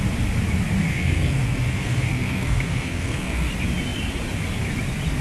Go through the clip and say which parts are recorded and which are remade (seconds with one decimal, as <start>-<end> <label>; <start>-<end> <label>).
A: 0.0-0.8 recorded; 0.8-3.5 remade; 3.5-5.2 recorded